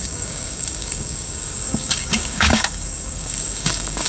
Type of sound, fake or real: fake